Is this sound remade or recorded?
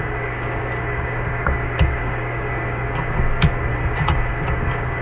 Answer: remade